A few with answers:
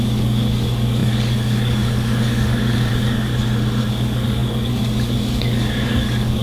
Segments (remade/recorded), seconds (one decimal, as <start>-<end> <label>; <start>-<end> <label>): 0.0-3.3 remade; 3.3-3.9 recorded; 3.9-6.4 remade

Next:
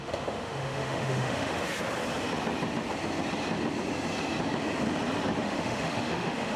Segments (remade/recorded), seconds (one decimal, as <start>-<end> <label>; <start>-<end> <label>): 0.0-1.7 remade; 1.7-5.4 recorded; 5.4-6.6 remade

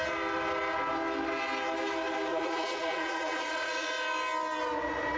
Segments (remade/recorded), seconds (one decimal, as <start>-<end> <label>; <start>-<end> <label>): 0.0-2.3 recorded; 2.3-3.9 remade; 3.9-5.2 recorded